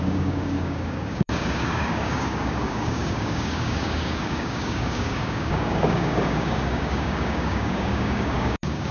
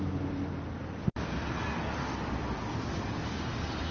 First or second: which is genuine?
second